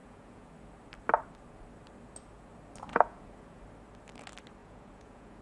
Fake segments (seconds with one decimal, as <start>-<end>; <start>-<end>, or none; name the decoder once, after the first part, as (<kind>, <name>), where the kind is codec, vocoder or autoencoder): 0.0-0.5 (vocoder, Vocos); 2.9-3.6; 4.6-5.4